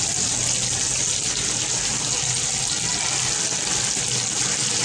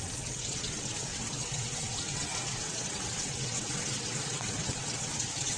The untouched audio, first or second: first